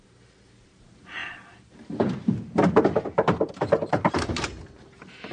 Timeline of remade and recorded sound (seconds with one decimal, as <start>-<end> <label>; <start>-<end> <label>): 0.0-1.2 remade; 1.2-3.5 recorded; 3.5-5.3 remade